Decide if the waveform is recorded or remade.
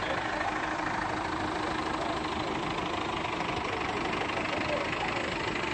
recorded